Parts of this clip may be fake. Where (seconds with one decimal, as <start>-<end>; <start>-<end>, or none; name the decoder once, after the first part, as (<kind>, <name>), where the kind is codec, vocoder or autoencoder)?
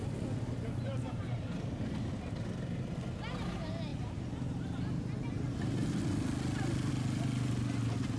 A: 0.9-1.4 (vocoder, BigVGAN v2)